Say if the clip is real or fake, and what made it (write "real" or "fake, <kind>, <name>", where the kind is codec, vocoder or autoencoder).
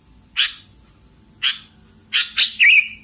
real